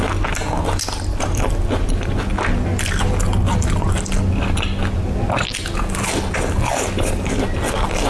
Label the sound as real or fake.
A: real